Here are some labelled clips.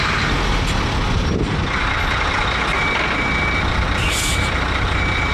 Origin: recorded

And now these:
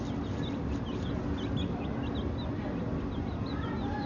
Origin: recorded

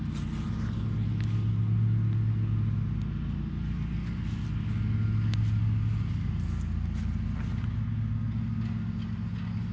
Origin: recorded